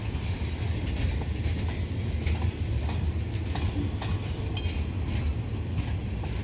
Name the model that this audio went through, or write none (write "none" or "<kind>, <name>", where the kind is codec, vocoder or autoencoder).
none